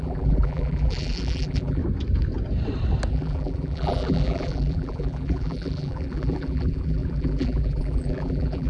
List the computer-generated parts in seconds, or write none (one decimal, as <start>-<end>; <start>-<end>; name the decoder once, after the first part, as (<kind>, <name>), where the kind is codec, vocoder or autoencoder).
0.0-1.8 (vocoder, BigVGAN v2); 3.1-8.7